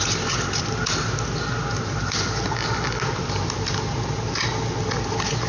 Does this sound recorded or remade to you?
recorded